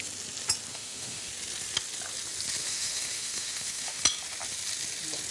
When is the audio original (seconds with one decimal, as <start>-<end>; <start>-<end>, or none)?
0.0-0.7; 1.3-2.6; 4.0-5.3